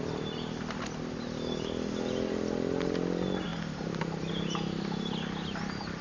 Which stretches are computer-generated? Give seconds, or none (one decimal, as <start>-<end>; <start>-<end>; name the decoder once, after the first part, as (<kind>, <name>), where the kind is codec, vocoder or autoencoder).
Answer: none